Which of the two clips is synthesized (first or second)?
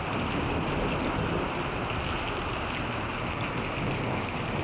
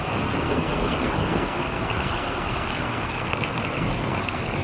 second